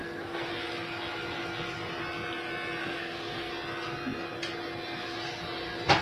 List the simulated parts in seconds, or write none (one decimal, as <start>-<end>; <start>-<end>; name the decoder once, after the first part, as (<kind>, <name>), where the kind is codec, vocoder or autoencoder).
0.0-0.5 (codec, SNAC); 2.8-3.5